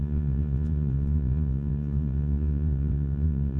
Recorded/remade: remade